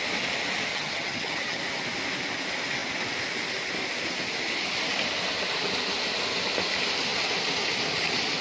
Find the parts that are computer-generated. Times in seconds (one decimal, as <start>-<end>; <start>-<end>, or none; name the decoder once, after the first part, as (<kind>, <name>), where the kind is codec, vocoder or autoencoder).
0.7-1.6 (vocoder, HiFi-GAN)